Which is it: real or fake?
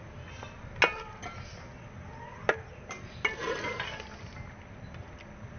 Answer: real